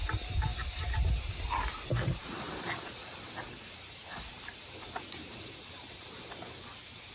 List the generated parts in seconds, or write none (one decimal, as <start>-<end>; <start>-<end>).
0.5-1.2; 1.9-6.0